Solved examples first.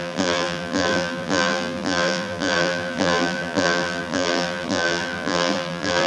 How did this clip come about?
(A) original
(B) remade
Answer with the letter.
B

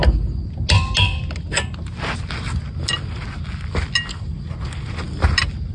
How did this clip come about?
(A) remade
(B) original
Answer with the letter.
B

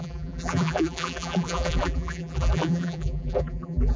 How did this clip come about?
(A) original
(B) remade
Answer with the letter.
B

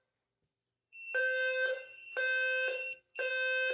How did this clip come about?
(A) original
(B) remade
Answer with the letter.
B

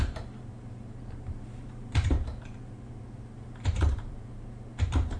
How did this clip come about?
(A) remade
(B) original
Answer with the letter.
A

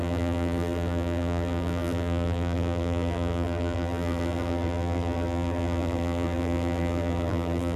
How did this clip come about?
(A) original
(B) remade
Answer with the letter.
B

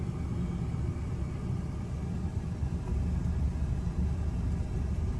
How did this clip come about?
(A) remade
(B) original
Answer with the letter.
A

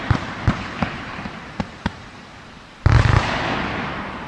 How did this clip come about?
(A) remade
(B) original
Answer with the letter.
A